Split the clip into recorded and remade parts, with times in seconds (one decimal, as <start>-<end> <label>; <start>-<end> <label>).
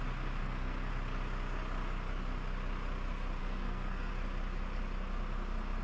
0.0-0.4 recorded; 0.4-0.9 remade; 0.9-3.4 recorded; 3.4-4.1 remade; 4.1-5.8 recorded